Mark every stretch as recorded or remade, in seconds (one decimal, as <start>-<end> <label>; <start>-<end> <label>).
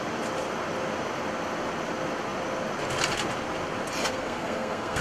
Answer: 0.0-4.0 recorded; 4.0-5.0 remade